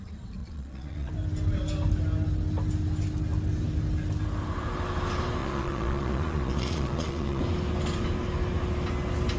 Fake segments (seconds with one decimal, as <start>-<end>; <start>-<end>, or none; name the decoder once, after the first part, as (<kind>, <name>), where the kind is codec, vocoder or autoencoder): 0.4-1.1 (vocoder, Vocos); 5.4-7.4